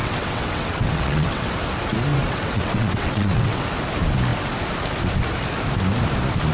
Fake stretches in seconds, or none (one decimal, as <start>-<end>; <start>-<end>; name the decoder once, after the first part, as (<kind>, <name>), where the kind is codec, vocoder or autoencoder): 0.0-1.5 (vocoder, WaveNeXt); 2.1-3.6